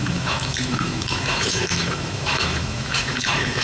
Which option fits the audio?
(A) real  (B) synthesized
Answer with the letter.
B